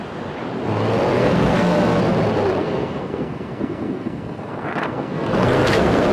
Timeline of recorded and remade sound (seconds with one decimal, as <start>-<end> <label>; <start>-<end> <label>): 0.0-1.1 recorded; 1.1-2.0 remade; 2.0-2.6 recorded; 2.6-6.1 remade